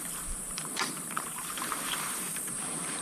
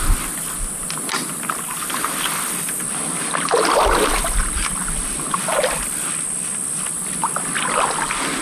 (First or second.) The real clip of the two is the second